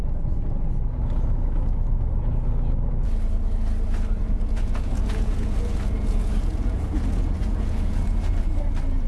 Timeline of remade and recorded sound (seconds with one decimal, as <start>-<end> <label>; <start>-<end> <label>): 0.0-4.2 recorded; 4.2-8.4 remade; 8.4-9.1 recorded